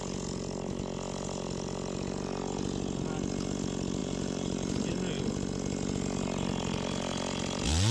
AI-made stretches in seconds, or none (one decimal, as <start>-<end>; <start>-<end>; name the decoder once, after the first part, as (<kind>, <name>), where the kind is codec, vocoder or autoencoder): 4.0-4.9 (vocoder, BigVGAN v2)